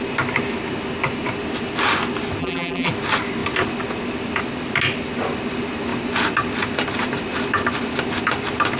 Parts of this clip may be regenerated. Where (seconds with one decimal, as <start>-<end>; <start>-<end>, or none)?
2.4-2.9